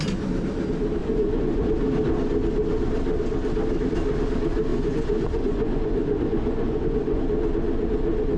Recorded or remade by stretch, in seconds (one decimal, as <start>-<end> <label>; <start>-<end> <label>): 0.0-1.0 recorded; 1.0-1.6 remade; 1.6-4.7 recorded; 4.7-7.2 remade; 7.2-8.4 recorded